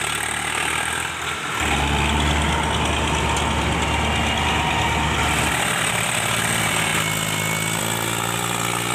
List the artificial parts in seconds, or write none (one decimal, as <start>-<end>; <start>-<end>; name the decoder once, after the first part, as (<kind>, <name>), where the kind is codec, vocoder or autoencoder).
none